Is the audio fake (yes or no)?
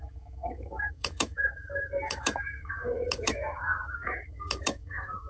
yes